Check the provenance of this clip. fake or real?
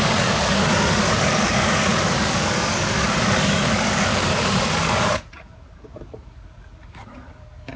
fake